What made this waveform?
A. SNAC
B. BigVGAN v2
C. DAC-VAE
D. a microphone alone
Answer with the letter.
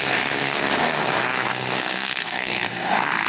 A